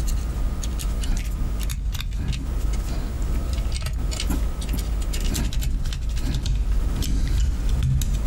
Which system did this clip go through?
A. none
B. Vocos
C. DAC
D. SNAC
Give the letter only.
A